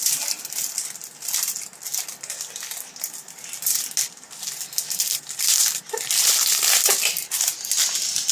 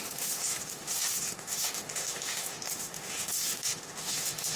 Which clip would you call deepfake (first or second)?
second